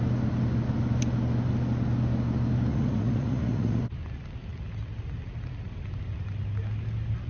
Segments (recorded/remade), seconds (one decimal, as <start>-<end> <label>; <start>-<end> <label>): 0.0-2.7 recorded; 2.7-3.8 remade; 3.8-7.3 recorded